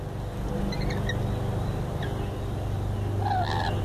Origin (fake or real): real